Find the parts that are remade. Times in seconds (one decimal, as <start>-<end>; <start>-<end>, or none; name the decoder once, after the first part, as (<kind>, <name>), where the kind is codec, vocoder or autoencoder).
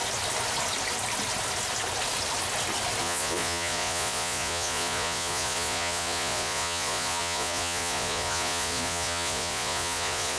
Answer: 3.0-10.4 (vocoder, Vocos)